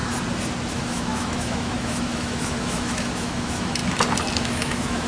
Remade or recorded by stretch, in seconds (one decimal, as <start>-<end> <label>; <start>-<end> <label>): 0.0-0.7 recorded; 0.7-3.8 remade; 3.8-4.4 recorded; 4.4-5.1 remade